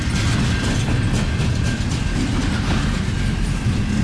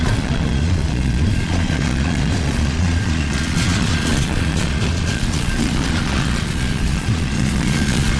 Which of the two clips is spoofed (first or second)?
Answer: second